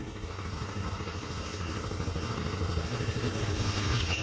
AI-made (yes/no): yes